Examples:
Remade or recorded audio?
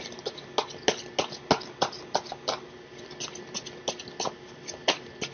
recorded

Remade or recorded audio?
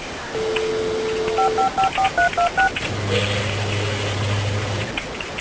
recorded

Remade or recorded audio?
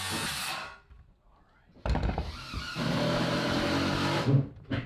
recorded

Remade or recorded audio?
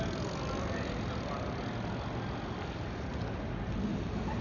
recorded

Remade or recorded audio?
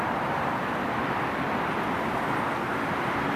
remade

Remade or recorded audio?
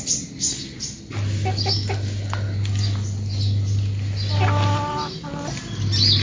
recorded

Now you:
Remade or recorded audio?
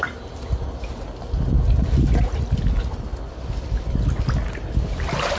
recorded